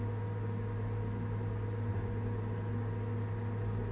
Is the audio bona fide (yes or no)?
yes